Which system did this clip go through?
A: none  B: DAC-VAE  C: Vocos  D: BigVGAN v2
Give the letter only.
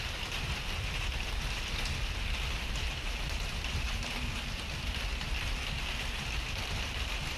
A